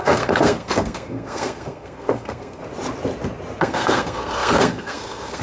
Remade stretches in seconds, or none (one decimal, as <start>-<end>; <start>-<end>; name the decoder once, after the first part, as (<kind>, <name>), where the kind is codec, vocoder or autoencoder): 0.0-2.6 (codec, SNAC); 3.6-5.4